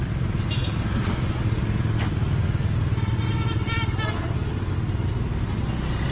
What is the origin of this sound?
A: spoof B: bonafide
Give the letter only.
B